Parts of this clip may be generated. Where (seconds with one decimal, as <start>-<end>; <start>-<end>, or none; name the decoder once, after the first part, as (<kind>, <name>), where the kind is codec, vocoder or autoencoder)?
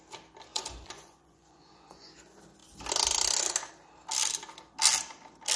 0.5-2.2 (vocoder, Vocos)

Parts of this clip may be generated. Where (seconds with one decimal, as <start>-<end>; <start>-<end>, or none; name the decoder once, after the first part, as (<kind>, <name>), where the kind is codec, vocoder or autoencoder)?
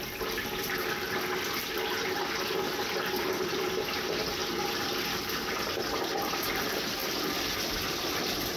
0.0-8.6 (vocoder, BigVGAN v2)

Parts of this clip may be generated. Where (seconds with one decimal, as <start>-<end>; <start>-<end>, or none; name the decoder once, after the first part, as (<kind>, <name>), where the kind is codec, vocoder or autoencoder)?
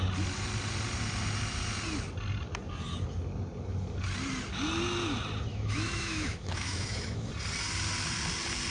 5.5-7.3 (autoencoder, DAC-VAE)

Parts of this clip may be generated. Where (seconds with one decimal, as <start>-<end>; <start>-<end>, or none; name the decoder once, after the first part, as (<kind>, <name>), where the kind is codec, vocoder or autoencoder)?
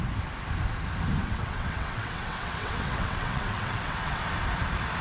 1.2-4.2 (vocoder, WaveNeXt)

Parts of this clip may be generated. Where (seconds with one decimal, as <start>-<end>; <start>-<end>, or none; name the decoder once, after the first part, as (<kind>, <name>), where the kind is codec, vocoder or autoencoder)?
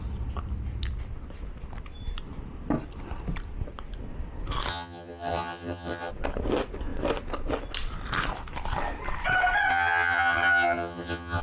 4.7-6.1 (vocoder, HiFi-GAN); 9.7-11.4